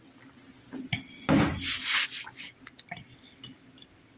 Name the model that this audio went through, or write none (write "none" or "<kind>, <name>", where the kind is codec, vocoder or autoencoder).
none